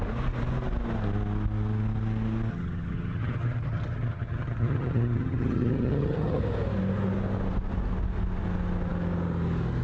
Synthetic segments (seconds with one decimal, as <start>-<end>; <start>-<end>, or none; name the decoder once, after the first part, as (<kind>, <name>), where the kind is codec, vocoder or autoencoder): 2.5-6.4 (vocoder, HiFi-GAN)